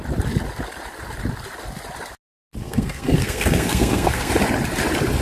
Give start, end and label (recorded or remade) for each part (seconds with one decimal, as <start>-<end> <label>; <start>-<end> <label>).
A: 0.0-2.6 recorded; 2.6-4.3 remade; 4.3-5.2 recorded